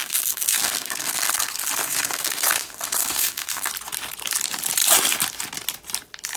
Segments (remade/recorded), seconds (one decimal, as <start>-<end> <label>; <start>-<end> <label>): 0.0-3.7 remade; 3.7-6.4 recorded